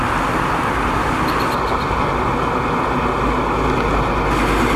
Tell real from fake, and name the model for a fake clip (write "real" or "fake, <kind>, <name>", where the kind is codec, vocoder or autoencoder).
real